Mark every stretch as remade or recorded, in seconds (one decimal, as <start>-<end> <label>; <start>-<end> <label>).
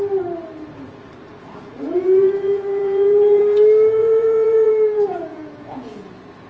0.0-1.3 recorded; 1.3-3.4 remade; 3.4-4.0 recorded; 4.0-4.7 remade; 4.7-5.3 recorded; 5.3-6.1 remade; 6.1-6.5 recorded